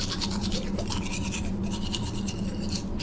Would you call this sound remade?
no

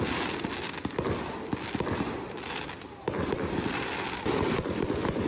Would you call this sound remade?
no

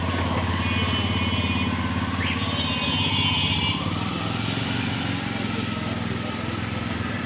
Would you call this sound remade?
no